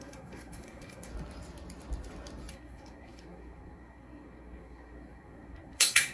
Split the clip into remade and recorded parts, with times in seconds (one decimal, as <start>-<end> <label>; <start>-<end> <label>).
0.0-1.1 remade; 1.1-2.5 recorded; 2.5-6.1 remade